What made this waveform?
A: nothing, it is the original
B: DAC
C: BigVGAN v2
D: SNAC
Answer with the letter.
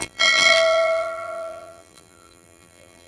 C